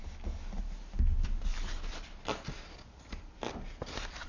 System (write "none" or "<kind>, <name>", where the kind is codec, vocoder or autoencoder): none